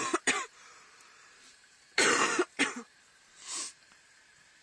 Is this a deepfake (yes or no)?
yes